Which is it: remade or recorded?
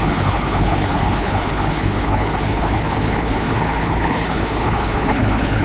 remade